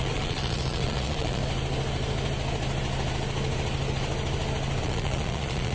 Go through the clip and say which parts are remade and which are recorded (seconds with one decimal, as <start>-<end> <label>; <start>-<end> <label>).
0.0-1.4 remade; 1.4-4.8 recorded; 4.8-5.7 remade